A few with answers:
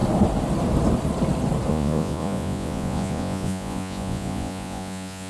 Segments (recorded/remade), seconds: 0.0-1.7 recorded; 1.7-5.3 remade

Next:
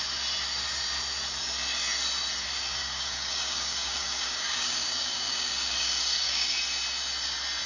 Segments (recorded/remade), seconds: 0.0-2.8 recorded; 2.8-6.6 remade; 6.6-7.7 recorded